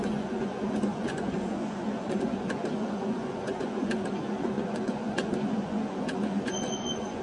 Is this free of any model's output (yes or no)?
no